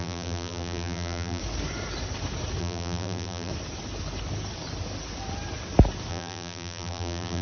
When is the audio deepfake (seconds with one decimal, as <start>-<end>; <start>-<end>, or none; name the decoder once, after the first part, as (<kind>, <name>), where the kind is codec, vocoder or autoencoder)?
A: 0.0-1.4 (vocoder, BigVGAN v2); 2.6-3.5; 6.1-7.4